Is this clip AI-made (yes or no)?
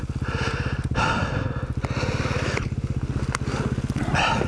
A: no